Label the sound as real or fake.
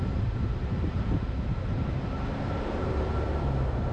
fake